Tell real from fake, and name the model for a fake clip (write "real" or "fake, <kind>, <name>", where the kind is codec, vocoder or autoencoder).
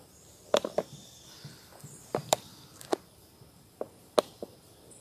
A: fake, vocoder, BigVGAN v2